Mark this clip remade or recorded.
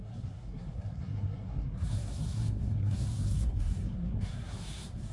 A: remade